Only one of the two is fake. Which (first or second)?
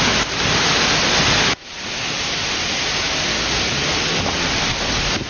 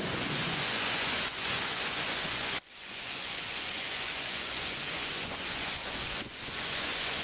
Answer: second